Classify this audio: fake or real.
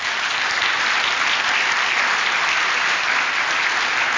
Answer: real